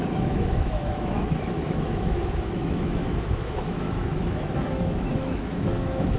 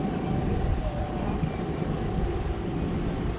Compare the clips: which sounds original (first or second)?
second